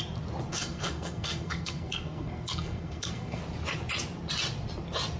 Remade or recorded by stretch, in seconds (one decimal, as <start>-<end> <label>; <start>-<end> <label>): 0.0-0.5 recorded; 0.5-3.4 remade; 3.4-5.2 recorded